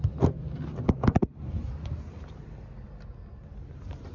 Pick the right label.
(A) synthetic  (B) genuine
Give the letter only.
B